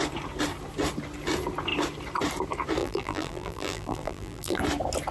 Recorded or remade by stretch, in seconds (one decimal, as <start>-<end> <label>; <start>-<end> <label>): 0.0-2.8 recorded; 2.8-4.6 remade; 4.6-5.1 recorded